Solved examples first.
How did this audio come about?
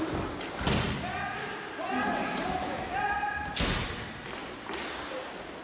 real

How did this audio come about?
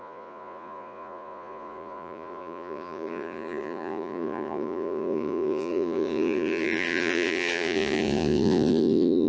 fake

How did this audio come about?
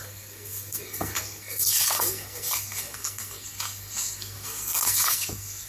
fake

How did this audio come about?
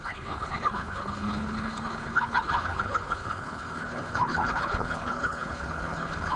fake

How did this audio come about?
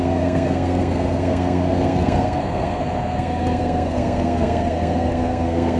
fake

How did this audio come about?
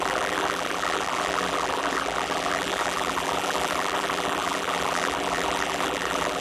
fake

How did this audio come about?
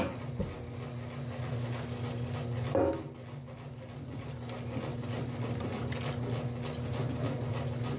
real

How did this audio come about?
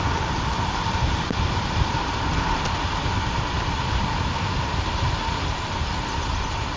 fake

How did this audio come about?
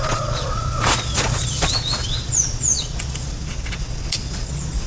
fake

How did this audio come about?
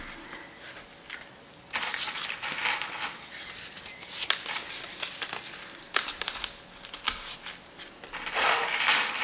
real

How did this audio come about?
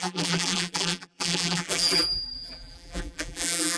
fake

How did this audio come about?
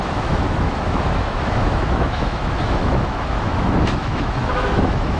fake